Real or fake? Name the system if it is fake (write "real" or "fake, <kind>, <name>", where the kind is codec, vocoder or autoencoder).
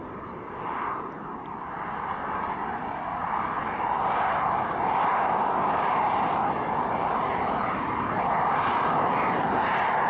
real